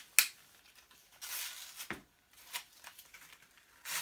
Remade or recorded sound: recorded